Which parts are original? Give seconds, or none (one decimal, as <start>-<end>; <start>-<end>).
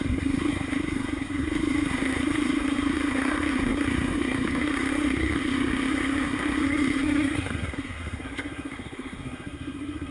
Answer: none